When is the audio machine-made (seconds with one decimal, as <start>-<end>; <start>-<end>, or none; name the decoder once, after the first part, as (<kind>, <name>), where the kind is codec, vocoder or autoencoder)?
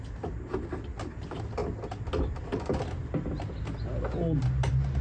none